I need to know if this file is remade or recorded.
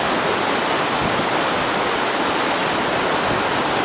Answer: recorded